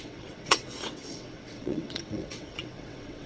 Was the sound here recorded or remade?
remade